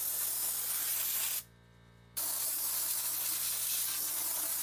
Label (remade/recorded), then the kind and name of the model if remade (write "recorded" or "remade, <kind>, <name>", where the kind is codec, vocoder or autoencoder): recorded